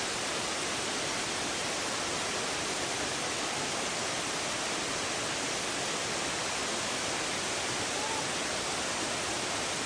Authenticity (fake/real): real